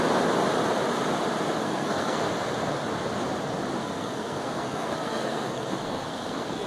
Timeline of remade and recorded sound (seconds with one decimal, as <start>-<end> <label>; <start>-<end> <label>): 0.0-1.6 recorded; 1.6-2.3 remade; 2.3-3.8 recorded; 3.8-6.7 remade